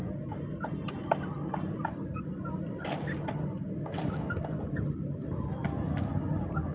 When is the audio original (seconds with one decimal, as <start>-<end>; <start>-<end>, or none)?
0.0-6.7